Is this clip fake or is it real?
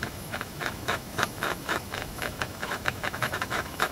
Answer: fake